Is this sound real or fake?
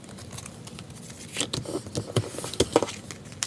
real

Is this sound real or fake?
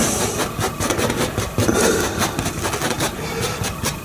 real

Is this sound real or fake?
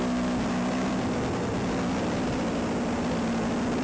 real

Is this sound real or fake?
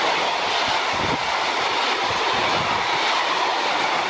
real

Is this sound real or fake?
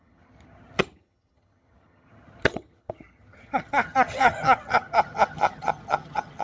fake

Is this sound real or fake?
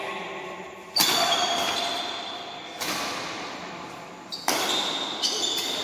real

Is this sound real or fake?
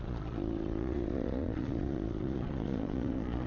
fake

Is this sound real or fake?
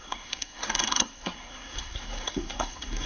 fake